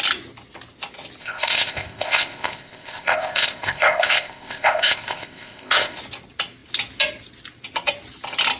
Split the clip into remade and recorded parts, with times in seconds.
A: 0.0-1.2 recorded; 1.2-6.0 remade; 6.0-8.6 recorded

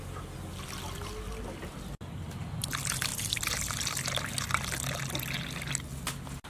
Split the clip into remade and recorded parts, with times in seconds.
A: 0.0-3.1 recorded; 3.1-4.3 remade; 4.3-6.5 recorded

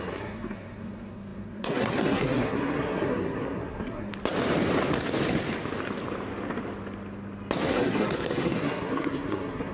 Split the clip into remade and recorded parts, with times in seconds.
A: 0.0-4.1 remade; 4.1-7.7 recorded; 7.7-9.7 remade

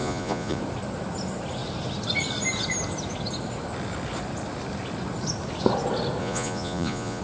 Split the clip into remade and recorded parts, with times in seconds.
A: 0.0-0.6 remade; 0.6-6.2 recorded; 6.2-7.2 remade

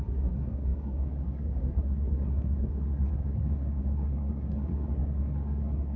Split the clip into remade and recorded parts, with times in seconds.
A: 0.0-6.0 remade

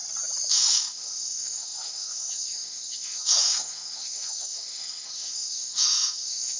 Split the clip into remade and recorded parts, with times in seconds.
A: 0.0-0.5 recorded; 0.5-6.6 remade

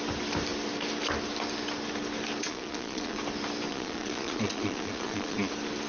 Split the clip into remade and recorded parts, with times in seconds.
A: 0.0-2.4 recorded; 2.4-3.2 remade; 3.2-3.7 recorded; 3.7-5.5 remade; 5.5-5.9 recorded